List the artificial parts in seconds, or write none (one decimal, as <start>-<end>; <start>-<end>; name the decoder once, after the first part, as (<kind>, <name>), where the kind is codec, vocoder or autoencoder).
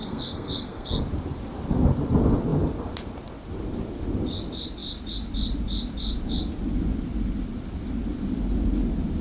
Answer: 0.0-1.0 (codec, SNAC)